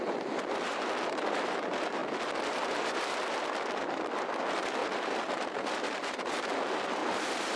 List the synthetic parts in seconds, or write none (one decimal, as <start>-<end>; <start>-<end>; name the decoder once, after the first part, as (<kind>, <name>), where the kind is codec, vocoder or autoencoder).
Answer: 0.0-2.0 (vocoder, BigVGAN v2); 2.5-7.6